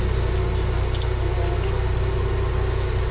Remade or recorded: recorded